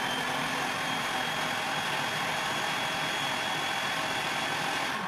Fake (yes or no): no